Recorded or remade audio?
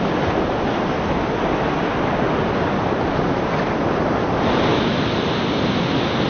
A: recorded